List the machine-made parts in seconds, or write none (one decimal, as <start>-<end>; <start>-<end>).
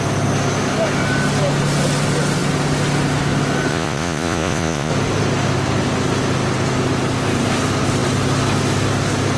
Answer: 3.7-4.9